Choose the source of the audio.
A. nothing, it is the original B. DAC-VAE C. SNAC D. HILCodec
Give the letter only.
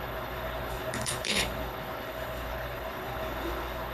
D